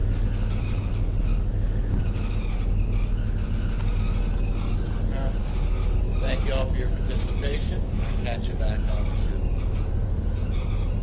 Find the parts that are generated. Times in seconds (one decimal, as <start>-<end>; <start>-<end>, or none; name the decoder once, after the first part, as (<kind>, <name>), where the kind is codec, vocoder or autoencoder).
5.4-6.0 (codec, DAC); 7.5-9.3